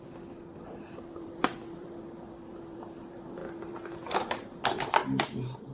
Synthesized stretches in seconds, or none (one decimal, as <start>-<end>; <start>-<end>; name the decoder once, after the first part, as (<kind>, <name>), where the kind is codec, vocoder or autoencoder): 0.0-0.5 (vocoder, BigVGAN v2); 1.1-5.7